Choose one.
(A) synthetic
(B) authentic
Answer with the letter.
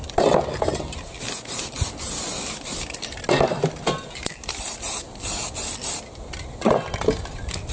B